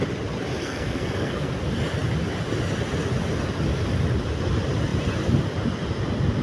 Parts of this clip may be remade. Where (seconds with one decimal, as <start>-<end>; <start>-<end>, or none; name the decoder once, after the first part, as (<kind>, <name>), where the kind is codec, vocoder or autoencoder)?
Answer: 0.6-1.5 (codec, SNAC)